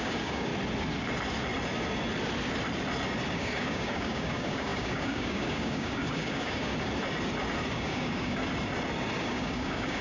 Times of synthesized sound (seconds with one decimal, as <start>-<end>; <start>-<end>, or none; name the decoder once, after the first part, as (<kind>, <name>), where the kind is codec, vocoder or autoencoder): 0.0-0.5 (codec, DAC); 3.3-6.7; 7.7-8.4; 9.2-10.0